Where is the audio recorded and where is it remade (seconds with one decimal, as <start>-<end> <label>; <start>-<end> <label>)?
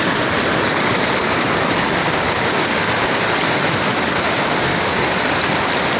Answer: 0.0-2.0 recorded; 2.0-3.2 remade; 3.2-3.9 recorded; 3.9-5.0 remade; 5.0-6.0 recorded